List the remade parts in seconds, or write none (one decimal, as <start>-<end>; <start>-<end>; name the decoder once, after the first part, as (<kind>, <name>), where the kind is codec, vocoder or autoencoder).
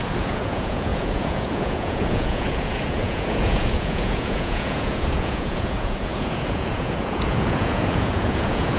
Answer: 0.0-8.8 (vocoder, Vocos)